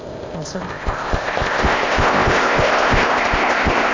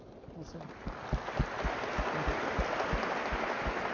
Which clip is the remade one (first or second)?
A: first